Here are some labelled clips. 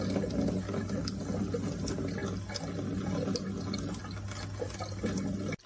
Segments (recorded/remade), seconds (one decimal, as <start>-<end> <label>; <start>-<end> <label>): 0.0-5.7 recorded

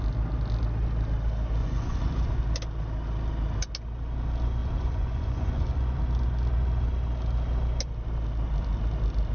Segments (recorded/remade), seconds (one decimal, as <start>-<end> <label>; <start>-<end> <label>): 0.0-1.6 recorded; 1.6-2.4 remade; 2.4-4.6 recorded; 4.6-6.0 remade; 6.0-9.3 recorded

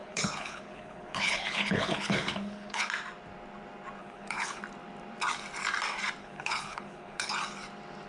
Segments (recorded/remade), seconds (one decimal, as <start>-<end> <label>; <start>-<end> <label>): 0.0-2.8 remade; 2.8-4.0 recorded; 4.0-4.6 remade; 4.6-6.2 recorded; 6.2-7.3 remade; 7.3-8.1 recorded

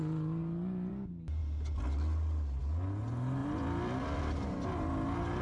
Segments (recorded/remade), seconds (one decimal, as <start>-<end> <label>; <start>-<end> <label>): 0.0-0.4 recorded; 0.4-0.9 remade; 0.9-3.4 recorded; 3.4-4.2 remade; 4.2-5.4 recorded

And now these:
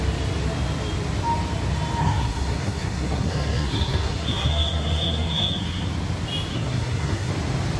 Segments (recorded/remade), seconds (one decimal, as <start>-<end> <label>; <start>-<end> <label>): 0.0-2.0 recorded; 2.0-5.9 remade; 5.9-6.5 recorded; 6.5-7.3 remade; 7.3-7.8 recorded